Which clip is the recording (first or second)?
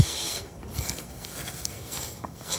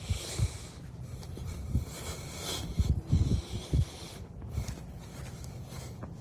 second